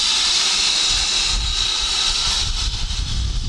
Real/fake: real